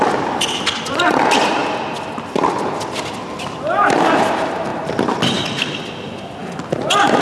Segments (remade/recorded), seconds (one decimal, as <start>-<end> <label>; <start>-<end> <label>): 0.0-7.2 recorded